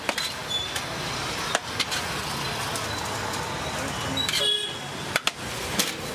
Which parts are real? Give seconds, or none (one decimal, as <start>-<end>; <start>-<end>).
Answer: 0.0-6.1